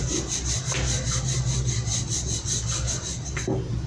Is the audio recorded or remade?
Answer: recorded